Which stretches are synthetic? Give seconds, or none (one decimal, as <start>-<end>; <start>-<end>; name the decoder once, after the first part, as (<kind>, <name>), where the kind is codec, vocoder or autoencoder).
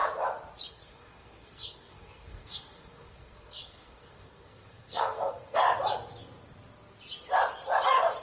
0.7-5.6 (codec, SNAC)